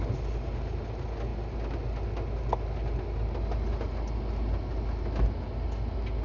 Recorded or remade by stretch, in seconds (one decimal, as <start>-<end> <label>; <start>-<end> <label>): 0.0-6.2 recorded

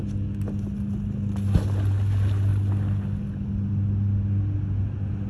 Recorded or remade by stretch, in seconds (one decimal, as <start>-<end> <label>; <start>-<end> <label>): 0.0-5.3 recorded